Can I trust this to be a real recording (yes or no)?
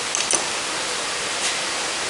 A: yes